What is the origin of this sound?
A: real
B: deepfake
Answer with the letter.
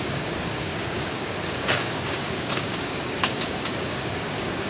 B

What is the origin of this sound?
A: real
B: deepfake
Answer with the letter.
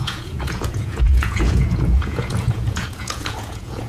B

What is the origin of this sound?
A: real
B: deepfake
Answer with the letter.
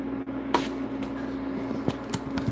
A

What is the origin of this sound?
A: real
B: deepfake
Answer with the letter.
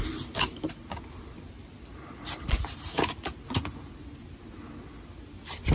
A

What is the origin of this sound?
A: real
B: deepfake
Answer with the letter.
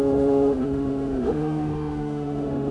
B